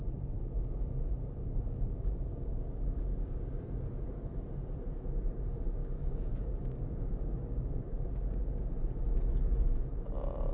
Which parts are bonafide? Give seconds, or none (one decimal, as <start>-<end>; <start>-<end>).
0.0-0.4; 3.5-5.8; 8.7-10.5